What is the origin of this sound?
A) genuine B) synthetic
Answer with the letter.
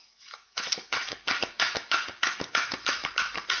B